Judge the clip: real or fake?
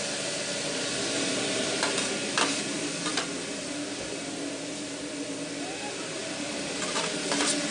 real